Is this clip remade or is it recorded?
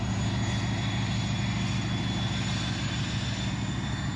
recorded